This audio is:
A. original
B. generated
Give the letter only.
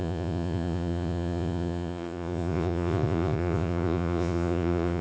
B